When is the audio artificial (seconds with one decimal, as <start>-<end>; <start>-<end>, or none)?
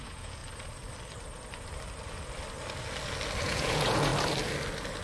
0.0-0.4; 3.4-4.1